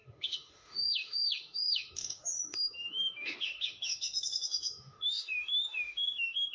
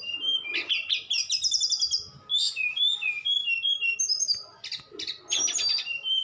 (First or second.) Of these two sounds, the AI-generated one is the first